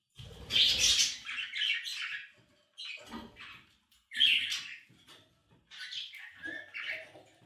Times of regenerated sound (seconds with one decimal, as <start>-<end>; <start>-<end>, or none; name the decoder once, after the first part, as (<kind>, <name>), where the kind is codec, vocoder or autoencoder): none